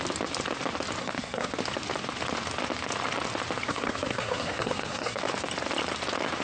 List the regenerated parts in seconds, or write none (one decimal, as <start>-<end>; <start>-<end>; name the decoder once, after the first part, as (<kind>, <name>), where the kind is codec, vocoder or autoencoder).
1.0-1.5 (codec, SNAC); 3.7-5.2